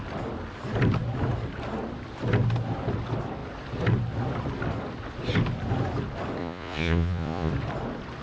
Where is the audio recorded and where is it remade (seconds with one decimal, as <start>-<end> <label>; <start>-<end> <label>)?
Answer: 0.0-6.4 recorded; 6.4-7.5 remade; 7.5-8.2 recorded